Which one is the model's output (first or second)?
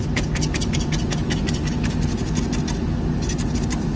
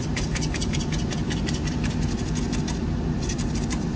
second